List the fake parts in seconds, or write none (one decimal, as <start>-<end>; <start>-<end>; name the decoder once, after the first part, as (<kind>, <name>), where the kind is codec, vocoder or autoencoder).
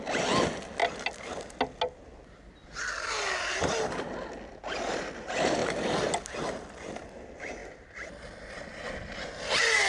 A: none